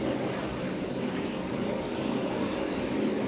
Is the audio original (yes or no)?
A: no